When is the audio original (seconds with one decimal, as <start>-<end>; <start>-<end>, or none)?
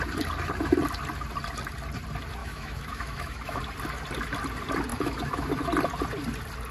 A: 0.0-2.4; 3.6-4.9; 5.6-6.7